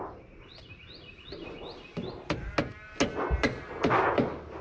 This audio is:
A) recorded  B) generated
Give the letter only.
A